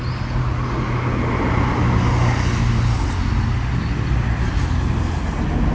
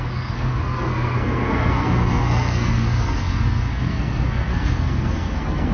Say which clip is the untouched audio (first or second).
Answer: first